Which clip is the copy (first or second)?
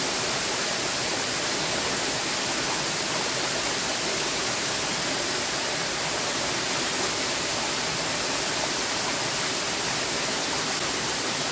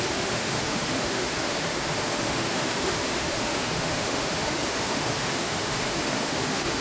second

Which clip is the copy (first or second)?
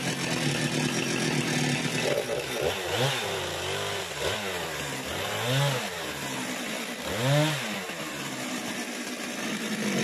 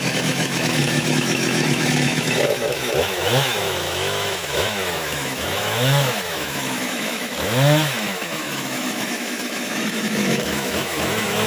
second